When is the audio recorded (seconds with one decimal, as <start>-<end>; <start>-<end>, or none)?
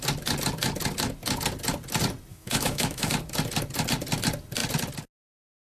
0.0-2.3; 3.1-5.7